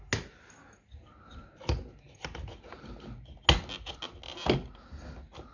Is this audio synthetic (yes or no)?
no